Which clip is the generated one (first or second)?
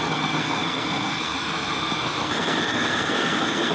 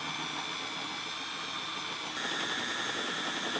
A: first